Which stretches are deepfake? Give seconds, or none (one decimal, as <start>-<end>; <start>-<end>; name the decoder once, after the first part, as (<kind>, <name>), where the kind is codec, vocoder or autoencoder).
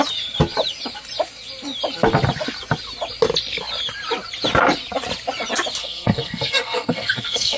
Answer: 5.8-7.6 (codec, SNAC)